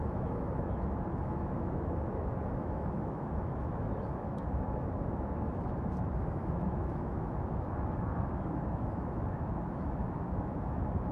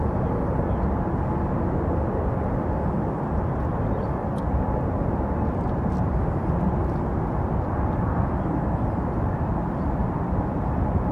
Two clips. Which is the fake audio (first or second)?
first